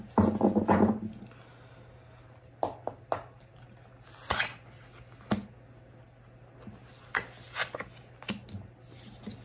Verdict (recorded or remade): recorded